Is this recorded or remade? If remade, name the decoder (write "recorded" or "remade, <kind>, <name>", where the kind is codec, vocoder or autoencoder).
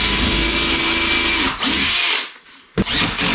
recorded